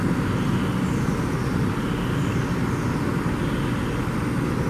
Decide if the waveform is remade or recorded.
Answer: recorded